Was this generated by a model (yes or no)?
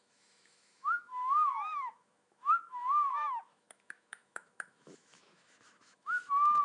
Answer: yes